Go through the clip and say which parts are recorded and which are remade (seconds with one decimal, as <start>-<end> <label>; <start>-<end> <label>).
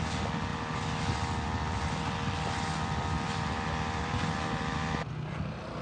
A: 0.0-5.8 recorded